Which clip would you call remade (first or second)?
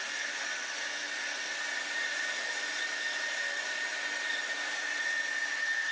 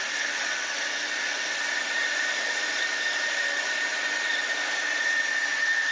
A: second